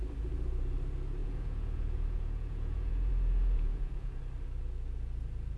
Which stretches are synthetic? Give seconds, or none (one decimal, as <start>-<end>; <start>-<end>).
1.2-4.2